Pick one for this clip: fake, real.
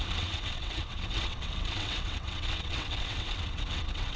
fake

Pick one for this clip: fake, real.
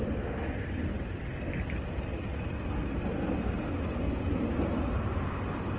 real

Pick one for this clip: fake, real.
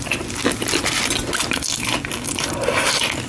real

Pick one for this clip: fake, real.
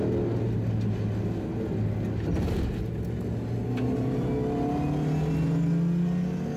real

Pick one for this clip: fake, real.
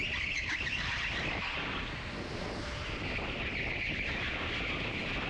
real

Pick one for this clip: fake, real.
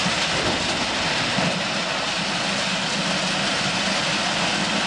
real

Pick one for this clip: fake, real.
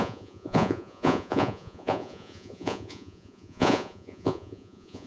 fake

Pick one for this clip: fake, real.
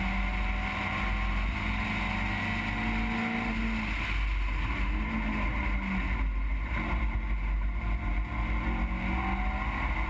real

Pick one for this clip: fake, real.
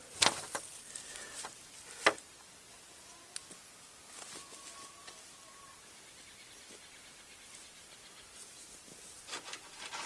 real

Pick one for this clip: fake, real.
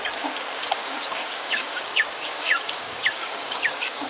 fake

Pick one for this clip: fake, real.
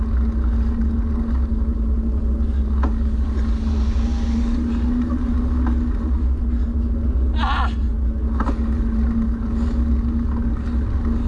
real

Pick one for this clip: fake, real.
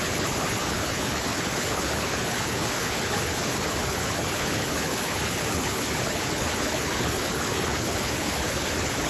fake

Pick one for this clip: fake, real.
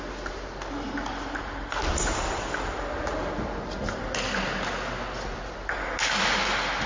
real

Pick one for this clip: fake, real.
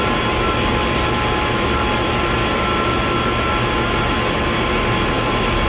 real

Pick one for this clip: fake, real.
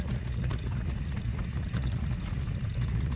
fake